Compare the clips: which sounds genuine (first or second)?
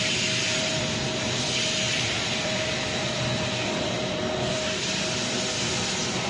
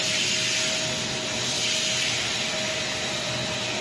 second